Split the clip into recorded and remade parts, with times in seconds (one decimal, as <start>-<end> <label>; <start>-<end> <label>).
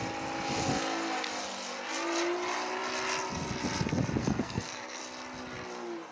0.0-4.2 recorded; 4.2-5.0 remade; 5.0-6.1 recorded